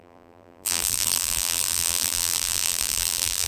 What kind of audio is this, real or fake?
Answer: fake